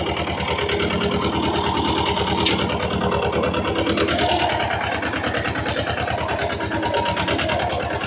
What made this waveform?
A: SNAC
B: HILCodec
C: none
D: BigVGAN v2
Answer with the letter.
C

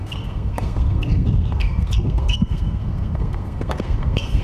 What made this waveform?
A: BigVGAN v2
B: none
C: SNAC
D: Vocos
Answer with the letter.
C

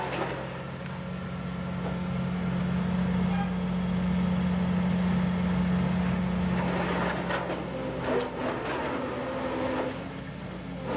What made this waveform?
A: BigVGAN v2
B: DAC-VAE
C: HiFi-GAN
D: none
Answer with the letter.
D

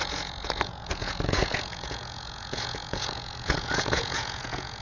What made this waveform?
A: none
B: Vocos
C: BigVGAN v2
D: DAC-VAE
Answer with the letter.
B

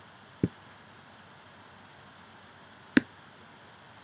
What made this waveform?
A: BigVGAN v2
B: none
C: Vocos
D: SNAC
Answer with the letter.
B